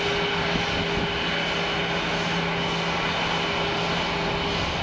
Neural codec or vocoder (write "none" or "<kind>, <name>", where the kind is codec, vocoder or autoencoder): none